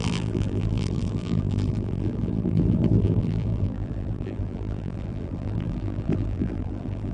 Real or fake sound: fake